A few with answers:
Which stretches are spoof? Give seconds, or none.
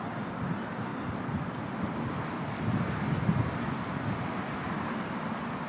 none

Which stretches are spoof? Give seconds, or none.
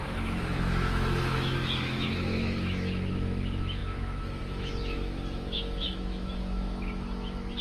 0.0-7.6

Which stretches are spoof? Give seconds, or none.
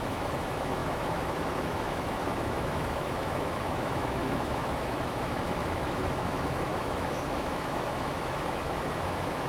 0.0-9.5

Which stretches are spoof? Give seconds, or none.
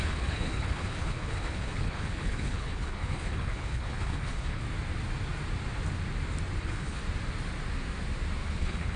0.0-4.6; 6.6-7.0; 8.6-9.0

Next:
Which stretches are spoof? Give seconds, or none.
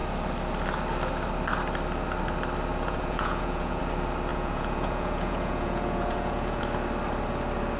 2.7-3.8; 4.3-6.6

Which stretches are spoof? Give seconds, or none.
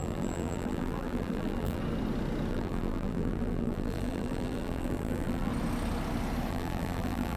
0.0-1.8; 2.5-5.5; 6.5-7.4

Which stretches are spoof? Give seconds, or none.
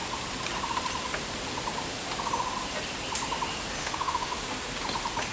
3.8-4.4